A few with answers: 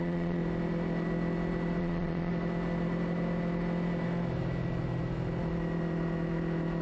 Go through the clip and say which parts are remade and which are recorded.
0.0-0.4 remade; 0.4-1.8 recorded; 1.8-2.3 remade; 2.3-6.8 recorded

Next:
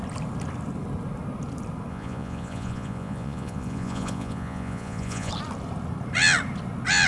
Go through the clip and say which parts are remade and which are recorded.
0.0-1.9 recorded; 1.9-5.3 remade; 5.3-7.1 recorded